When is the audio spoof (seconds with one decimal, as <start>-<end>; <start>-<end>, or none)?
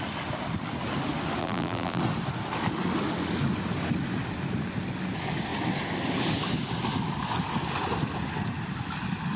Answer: 1.4-2.0